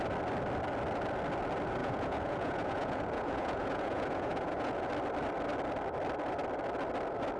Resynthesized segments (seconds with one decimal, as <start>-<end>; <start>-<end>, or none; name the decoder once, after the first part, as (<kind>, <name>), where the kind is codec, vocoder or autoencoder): 1.8-4.9 (vocoder, Vocos)